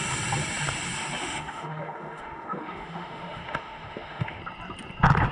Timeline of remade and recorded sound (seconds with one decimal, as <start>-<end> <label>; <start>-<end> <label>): 0.0-1.2 recorded; 1.2-4.4 remade; 4.4-5.3 recorded